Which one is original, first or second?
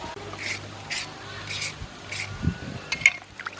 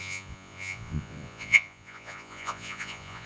first